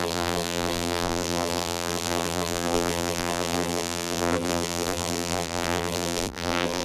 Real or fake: fake